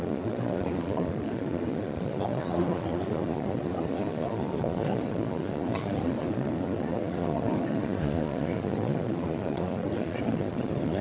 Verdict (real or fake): fake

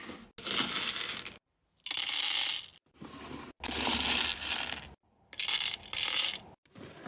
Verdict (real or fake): real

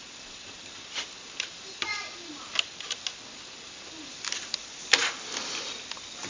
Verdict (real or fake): real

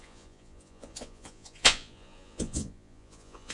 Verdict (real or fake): fake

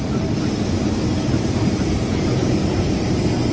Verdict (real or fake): real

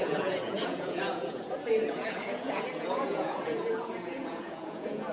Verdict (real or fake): fake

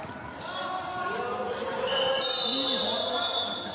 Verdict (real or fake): real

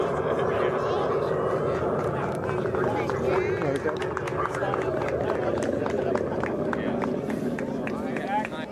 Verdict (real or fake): real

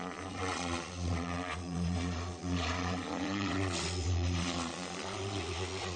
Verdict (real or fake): fake